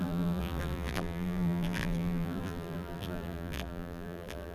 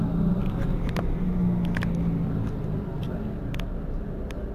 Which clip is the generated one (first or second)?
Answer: first